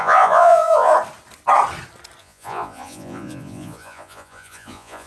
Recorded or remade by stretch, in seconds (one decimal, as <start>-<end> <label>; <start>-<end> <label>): 0.0-0.9 remade; 0.9-2.2 recorded; 2.2-5.1 remade